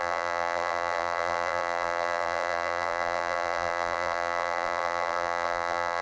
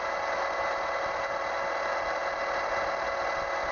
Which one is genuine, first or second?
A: second